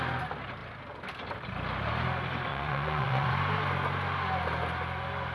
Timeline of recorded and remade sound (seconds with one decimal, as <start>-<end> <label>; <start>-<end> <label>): 0.0-2.5 recorded; 2.5-3.3 remade; 3.3-5.3 recorded